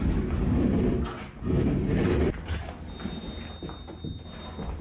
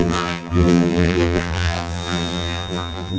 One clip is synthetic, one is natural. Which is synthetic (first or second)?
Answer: second